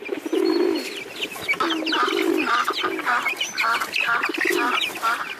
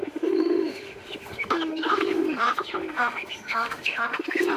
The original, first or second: first